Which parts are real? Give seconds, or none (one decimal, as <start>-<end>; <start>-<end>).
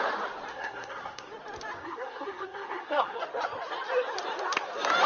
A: 0.0-0.5; 1.3-1.8; 3.2-5.1